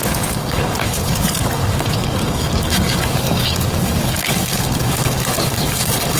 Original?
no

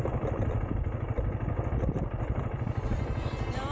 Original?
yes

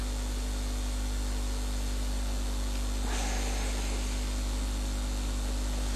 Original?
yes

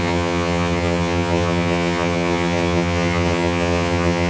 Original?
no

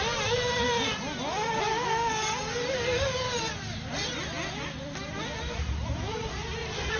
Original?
yes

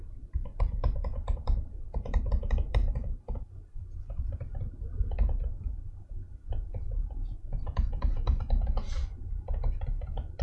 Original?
no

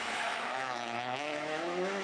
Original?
no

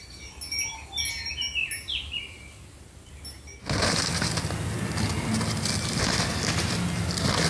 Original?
yes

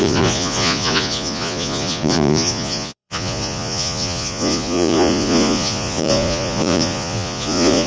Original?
no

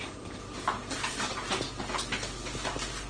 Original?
yes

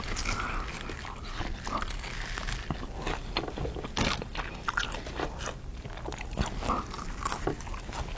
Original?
yes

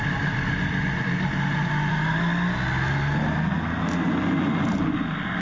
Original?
yes